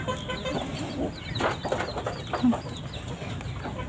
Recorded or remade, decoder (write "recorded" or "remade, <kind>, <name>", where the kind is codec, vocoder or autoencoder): recorded